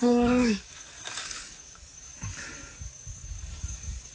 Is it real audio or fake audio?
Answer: fake